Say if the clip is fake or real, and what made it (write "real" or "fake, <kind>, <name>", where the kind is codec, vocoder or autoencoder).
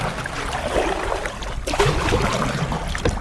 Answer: real